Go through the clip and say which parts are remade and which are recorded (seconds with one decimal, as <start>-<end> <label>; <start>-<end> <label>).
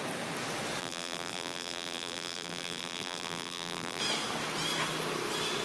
0.0-0.8 recorded; 0.8-4.0 remade; 4.0-5.6 recorded